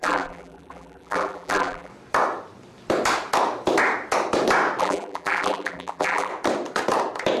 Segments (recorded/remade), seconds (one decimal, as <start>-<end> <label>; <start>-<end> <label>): 0.0-1.9 remade; 1.9-4.8 recorded; 4.8-6.3 remade; 6.3-7.4 recorded